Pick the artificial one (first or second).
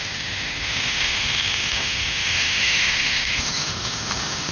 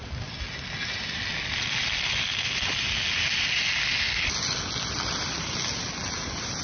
first